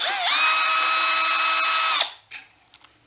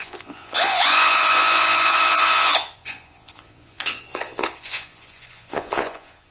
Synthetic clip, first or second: second